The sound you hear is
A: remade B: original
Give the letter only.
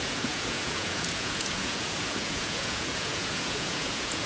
A